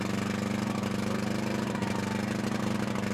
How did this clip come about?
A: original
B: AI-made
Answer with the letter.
A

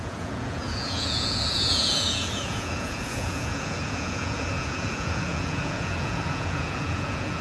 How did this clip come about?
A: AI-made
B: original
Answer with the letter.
A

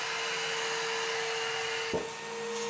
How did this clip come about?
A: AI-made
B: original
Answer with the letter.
B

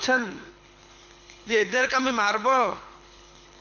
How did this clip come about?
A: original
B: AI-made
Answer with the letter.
B